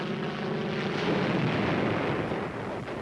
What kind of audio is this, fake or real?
real